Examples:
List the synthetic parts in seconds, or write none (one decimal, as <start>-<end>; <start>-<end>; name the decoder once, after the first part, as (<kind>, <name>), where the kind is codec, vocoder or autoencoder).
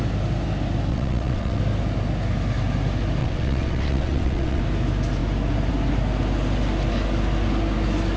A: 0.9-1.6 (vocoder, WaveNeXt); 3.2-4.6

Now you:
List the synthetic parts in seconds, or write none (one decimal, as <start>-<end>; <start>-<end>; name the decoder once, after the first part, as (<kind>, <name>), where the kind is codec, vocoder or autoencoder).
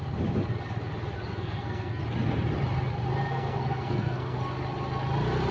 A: 1.3-2.0 (codec, SNAC); 3.3-4.4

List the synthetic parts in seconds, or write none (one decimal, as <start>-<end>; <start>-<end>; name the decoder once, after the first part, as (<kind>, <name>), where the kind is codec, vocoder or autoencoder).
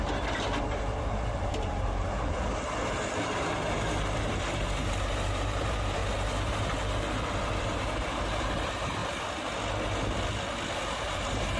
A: 0.0-6.0 (vocoder, BigVGAN v2); 7.6-9.0; 11.0-11.6